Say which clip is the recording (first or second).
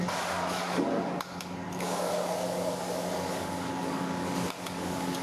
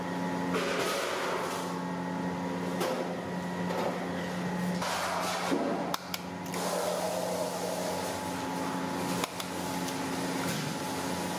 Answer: second